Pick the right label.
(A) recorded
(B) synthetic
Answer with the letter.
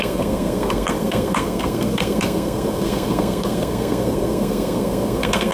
B